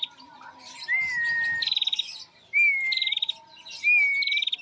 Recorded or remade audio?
recorded